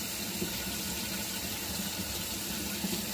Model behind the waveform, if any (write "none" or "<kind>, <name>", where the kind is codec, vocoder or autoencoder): vocoder, BigVGAN v2